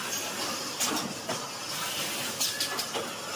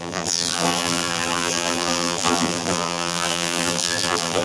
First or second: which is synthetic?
second